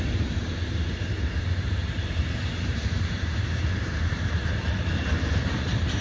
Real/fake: fake